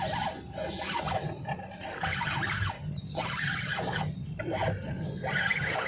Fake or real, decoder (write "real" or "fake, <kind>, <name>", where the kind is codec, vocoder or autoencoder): fake, vocoder, BigVGAN v2